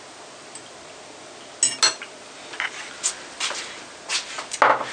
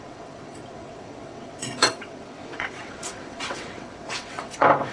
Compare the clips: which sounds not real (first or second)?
second